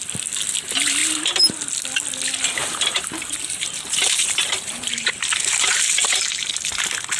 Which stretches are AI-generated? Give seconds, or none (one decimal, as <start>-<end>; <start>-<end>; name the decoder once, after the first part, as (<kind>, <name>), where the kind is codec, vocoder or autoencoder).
2.6-6.5 (vocoder, BigVGAN v2)

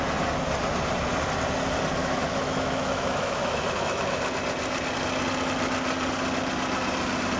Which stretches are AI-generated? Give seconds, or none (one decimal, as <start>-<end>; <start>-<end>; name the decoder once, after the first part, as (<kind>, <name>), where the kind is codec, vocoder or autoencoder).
2.0-4.2 (autoencoder, DAC-VAE)

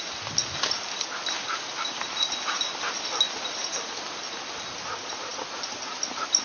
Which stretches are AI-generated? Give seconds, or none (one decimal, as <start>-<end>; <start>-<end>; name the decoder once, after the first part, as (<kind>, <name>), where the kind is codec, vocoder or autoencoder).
none

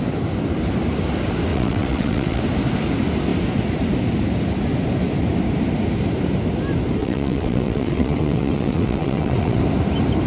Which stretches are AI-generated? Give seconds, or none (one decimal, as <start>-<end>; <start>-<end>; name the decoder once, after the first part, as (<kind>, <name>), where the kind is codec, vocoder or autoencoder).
1.5-2.4 (vocoder, WaveNeXt); 7.0-9.6

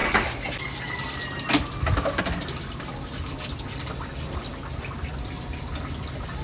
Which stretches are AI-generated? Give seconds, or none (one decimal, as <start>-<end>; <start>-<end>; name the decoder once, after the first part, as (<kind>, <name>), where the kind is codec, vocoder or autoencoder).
none

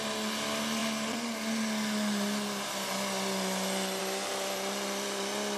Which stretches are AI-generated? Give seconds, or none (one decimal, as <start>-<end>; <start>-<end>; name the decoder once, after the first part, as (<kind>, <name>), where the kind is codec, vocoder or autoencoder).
none